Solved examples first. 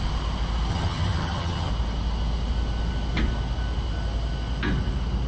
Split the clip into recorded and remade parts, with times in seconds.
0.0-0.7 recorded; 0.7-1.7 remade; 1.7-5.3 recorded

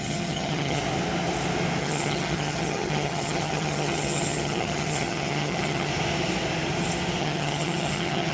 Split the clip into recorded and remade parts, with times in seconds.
0.0-0.8 remade; 0.8-1.8 recorded; 1.8-5.9 remade; 5.9-7.2 recorded; 7.2-8.3 remade

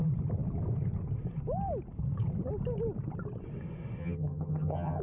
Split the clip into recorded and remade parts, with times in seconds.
0.0-4.0 recorded; 4.0-5.0 remade

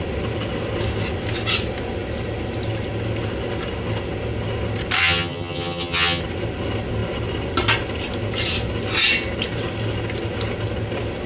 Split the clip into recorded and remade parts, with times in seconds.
0.0-5.0 recorded; 5.0-6.2 remade; 6.2-11.3 recorded

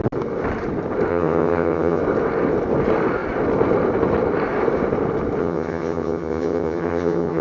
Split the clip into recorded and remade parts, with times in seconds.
0.0-1.1 recorded; 1.1-2.0 remade; 2.0-5.4 recorded; 5.4-7.4 remade